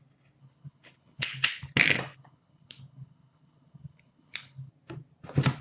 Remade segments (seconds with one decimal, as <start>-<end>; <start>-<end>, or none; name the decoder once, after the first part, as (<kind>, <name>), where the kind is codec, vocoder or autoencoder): 0.4-1.6 (codec, HILCodec); 2.1-4.7